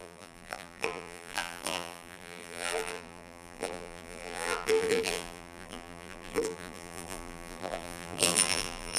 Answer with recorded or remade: remade